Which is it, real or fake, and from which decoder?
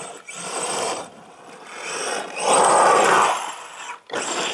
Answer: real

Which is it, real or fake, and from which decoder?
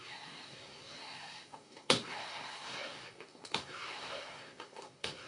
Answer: fake, codec, SNAC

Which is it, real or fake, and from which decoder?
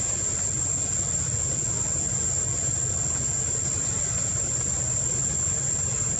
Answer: real